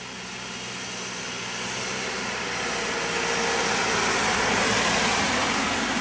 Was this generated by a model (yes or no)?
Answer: no